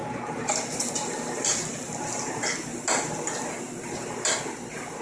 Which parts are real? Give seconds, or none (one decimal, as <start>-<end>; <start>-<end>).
0.0-5.0